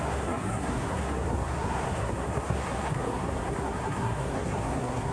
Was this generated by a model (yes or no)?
yes